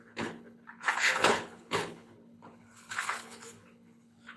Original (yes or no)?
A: no